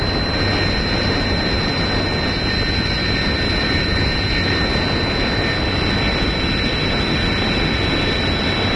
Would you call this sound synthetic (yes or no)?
no